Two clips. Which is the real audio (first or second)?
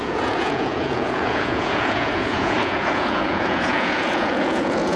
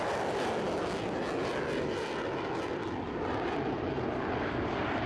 second